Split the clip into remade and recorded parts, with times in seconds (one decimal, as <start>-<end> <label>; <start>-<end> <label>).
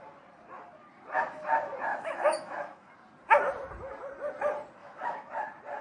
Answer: 0.0-1.9 recorded; 1.9-2.9 remade; 2.9-4.8 recorded; 4.8-5.3 remade; 5.3-5.8 recorded